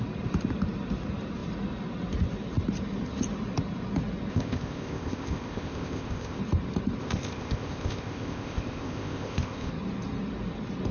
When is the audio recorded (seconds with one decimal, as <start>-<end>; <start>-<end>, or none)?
0.0-4.3; 6.4-7.0; 9.7-10.9